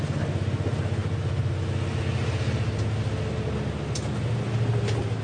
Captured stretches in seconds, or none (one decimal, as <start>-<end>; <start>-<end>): 0.0-5.2